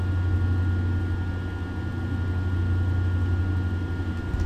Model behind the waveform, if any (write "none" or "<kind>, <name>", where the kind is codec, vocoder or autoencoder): none